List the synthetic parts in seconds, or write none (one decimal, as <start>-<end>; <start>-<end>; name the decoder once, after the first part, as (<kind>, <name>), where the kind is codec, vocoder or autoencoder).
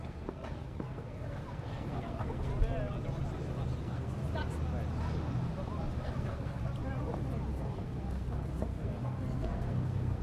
0.0-2.5 (codec, SNAC); 3.8-4.2; 6.0-6.6; 7.5-10.2